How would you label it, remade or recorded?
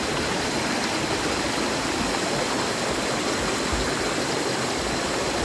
recorded